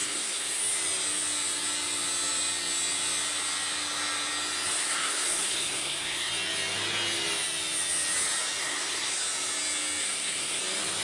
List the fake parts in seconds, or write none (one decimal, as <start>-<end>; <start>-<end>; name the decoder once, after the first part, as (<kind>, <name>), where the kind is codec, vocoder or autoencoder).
0.0-0.6 (codec, SNAC); 4.8-6.3; 8.6-9.2; 10.0-10.6